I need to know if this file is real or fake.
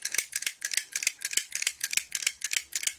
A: fake